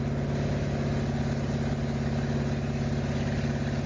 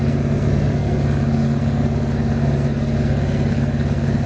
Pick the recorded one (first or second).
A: first